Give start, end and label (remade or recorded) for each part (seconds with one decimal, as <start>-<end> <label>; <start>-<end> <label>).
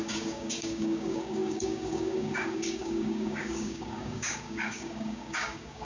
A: 0.0-5.8 remade